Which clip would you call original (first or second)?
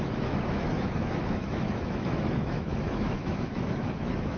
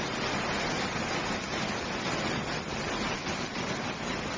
second